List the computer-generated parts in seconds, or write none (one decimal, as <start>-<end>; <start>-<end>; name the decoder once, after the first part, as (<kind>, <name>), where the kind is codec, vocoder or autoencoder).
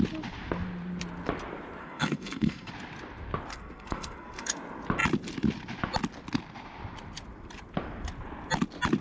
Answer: 1.8-2.7 (codec, SNAC); 3.5-4.5